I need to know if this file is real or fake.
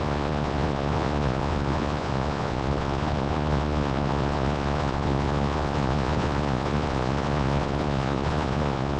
fake